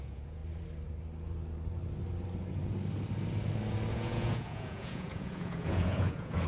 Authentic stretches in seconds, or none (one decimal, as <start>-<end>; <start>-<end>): 0.4-3.9